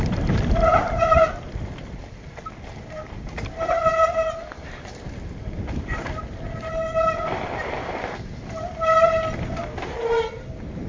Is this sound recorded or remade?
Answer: recorded